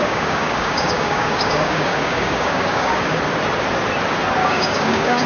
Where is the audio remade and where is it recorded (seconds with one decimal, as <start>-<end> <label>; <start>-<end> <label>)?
0.0-3.2 remade; 3.2-4.4 recorded; 4.4-5.3 remade